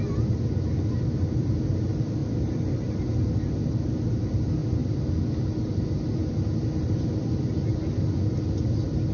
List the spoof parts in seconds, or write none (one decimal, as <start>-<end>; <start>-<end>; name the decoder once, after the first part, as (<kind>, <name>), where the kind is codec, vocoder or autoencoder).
none